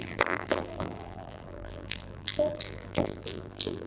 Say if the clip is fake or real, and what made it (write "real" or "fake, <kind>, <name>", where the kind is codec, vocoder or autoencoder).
fake, vocoder, BigVGAN v2